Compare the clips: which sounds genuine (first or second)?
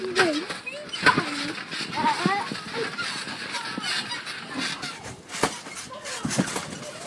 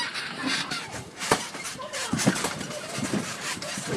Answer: first